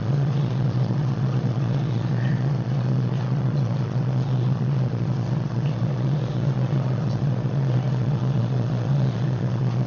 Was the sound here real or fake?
fake